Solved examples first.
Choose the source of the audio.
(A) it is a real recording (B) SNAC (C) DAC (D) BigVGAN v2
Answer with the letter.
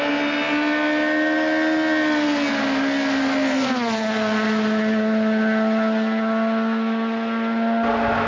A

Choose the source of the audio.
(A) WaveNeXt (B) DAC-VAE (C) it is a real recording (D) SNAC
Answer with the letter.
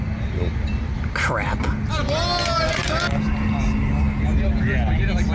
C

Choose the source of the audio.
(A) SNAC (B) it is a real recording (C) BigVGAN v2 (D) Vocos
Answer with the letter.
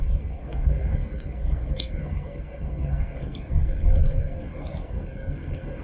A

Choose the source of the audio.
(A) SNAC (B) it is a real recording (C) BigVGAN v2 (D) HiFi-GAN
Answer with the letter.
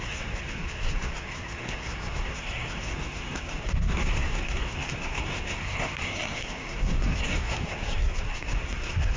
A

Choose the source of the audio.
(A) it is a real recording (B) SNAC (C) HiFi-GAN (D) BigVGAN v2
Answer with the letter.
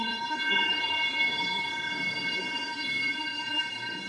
B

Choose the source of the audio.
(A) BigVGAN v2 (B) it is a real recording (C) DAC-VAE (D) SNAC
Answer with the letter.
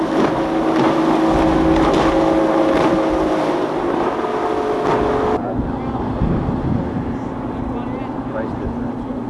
B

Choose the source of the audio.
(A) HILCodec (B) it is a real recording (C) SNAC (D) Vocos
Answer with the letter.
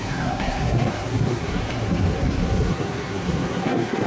C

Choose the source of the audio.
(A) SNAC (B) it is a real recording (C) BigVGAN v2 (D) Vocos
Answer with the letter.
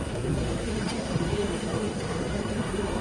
A